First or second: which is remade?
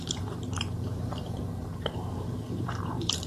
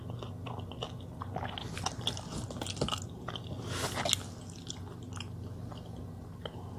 first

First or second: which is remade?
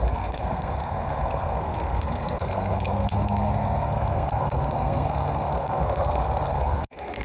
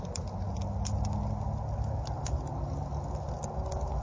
first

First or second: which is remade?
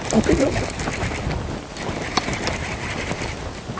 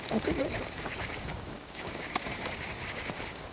second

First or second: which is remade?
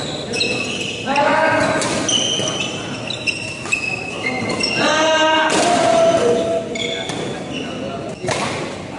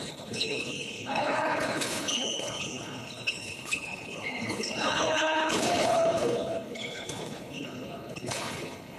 second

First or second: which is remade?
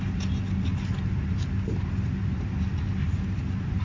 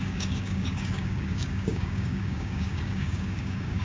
second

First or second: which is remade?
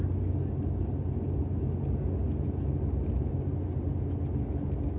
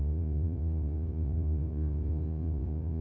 second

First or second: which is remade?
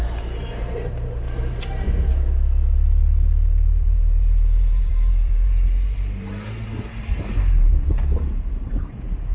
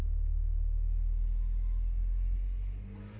first